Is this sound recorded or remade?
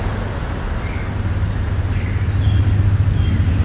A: recorded